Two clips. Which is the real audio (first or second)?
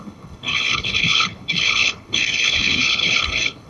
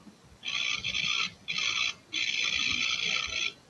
second